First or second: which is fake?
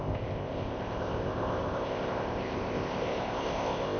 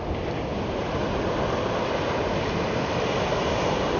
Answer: first